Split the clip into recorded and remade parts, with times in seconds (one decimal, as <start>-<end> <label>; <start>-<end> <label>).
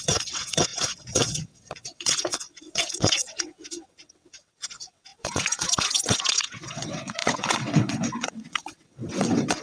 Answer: 0.0-9.6 remade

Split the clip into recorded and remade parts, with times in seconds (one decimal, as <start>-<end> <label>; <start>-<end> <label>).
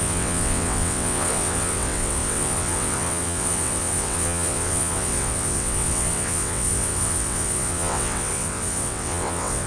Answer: 0.0-9.7 remade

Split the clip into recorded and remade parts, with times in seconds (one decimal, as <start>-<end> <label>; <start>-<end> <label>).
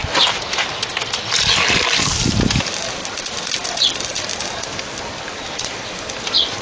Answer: 0.0-6.6 recorded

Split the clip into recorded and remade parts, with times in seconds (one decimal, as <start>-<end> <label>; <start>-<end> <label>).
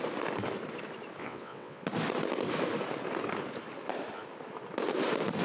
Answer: 0.0-1.2 recorded; 1.2-1.8 remade; 1.8-5.4 recorded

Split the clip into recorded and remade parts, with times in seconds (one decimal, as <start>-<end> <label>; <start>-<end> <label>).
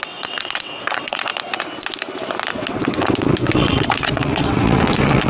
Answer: 0.0-1.3 remade; 1.3-2.5 recorded; 2.5-5.3 remade